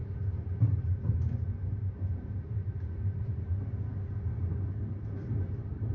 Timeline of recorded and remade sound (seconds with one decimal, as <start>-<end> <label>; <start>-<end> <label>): 0.0-3.5 remade; 3.5-5.9 recorded